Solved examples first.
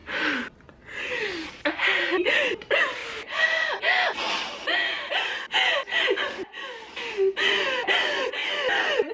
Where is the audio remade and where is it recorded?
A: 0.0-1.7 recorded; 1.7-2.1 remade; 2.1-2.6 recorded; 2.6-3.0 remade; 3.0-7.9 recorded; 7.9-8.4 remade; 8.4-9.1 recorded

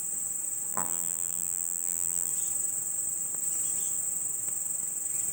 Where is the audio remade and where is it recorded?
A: 0.0-0.7 recorded; 0.7-2.3 remade; 2.3-5.3 recorded

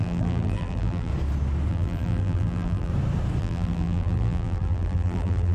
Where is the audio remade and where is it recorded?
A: 0.0-1.1 remade; 1.1-1.7 recorded; 1.7-2.9 remade; 2.9-3.4 recorded; 3.4-5.5 remade

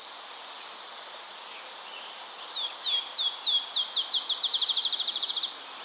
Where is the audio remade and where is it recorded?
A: 0.0-4.8 recorded; 4.8-5.3 remade; 5.3-5.8 recorded

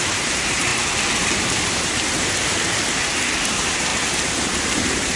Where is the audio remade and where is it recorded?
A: 0.0-0.7 remade; 0.7-1.4 recorded; 1.4-3.9 remade; 3.9-4.4 recorded; 4.4-5.2 remade

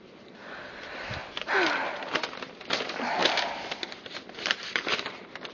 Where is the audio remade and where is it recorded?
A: 0.0-1.2 remade; 1.2-2.8 recorded; 2.8-3.2 remade; 3.2-4.5 recorded; 4.5-5.5 remade

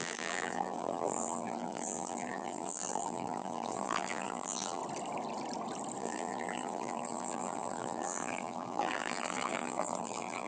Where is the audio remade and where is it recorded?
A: 0.0-4.8 remade; 4.8-6.0 recorded; 6.0-10.5 remade

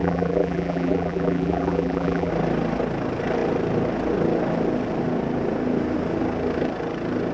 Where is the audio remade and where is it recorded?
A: 0.0-2.3 remade; 2.3-7.3 recorded